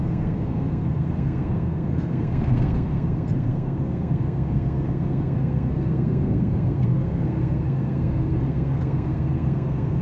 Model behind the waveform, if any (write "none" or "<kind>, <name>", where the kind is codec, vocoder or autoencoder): codec, SNAC